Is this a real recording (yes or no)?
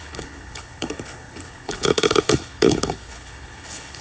no